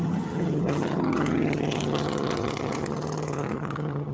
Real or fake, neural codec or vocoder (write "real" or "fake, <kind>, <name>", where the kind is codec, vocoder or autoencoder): fake, vocoder, HiFi-GAN